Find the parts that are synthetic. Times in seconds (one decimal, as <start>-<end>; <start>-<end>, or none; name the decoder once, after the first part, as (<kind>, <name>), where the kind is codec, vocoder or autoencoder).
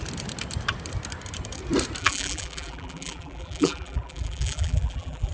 2.0-5.3 (vocoder, BigVGAN v2)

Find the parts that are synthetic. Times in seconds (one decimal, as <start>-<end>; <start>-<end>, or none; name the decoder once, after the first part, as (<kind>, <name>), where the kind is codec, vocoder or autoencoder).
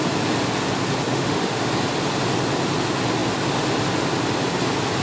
1.1-1.7 (autoencoder, DAC-VAE)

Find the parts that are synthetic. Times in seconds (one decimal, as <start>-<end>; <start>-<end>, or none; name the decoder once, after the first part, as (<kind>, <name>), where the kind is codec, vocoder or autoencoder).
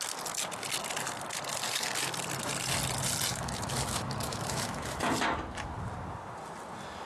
3.3-5.0 (autoencoder, DAC-VAE)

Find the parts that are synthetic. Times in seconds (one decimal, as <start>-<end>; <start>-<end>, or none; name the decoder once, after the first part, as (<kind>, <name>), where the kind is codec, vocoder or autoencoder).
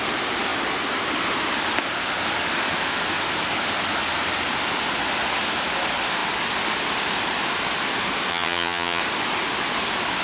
8.3-9.0 (vocoder, HiFi-GAN)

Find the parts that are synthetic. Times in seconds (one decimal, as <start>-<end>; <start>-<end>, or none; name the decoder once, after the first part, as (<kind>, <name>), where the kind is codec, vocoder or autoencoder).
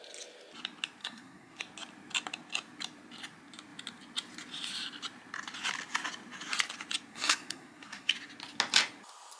1.0-1.6 (codec, SNAC); 7.1-8.1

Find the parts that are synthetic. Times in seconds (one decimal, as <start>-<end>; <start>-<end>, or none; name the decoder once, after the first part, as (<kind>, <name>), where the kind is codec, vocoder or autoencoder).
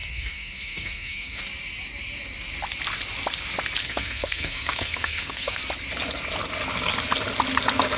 0.0-1.4 (codec, SNAC); 3.8-5.6